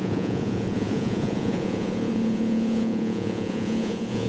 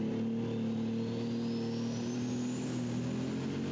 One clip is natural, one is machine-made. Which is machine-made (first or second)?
first